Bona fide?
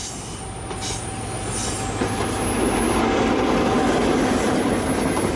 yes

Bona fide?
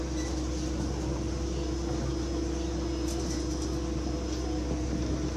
yes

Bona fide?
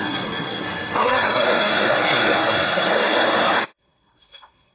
no